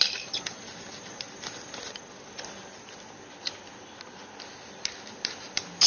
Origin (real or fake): real